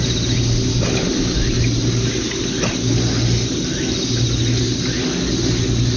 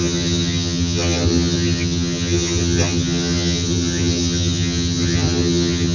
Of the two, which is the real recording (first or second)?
first